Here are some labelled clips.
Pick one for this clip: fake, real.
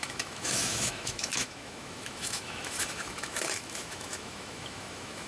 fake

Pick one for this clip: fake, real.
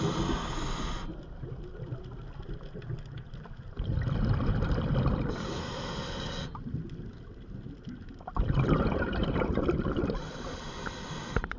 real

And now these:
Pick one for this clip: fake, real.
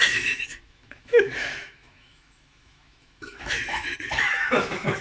fake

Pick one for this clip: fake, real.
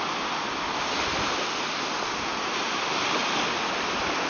real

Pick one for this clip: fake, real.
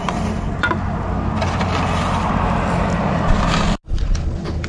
real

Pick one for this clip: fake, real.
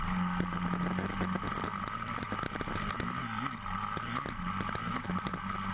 real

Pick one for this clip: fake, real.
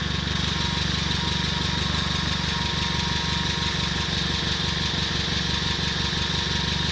real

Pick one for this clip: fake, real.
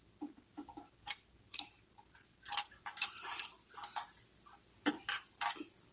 real